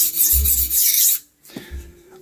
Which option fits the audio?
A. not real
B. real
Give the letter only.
B